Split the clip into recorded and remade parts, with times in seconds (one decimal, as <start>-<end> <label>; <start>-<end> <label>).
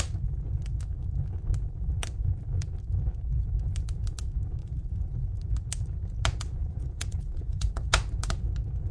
0.0-4.6 recorded; 4.6-5.2 remade; 5.2-6.6 recorded; 6.6-7.7 remade; 7.7-8.9 recorded